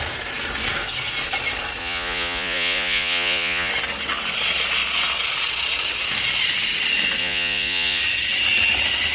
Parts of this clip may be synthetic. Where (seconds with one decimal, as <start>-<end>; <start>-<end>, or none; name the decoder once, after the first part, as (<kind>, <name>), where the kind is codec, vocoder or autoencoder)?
1.8-3.7 (vocoder, Vocos); 7.2-8.0